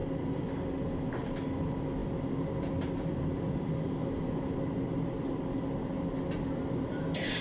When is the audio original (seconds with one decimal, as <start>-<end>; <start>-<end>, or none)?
0.0-7.4